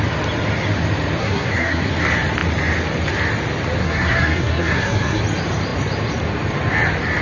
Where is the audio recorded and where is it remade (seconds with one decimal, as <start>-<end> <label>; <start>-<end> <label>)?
0.0-1.2 recorded; 1.2-1.9 remade; 1.9-3.8 recorded; 3.8-5.2 remade; 5.2-7.2 recorded